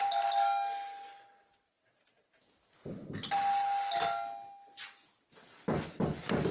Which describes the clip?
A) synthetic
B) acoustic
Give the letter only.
B